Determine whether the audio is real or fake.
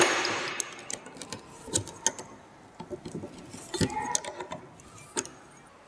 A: real